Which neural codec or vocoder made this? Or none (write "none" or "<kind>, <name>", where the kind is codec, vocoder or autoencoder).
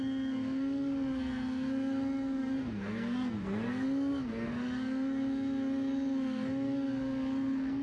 codec, SNAC